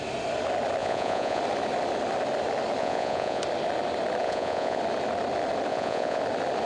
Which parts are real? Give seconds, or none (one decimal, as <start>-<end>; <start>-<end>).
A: 0.0-0.8; 1.4-2.8; 3.4-4.2; 4.8-5.7; 6.2-6.7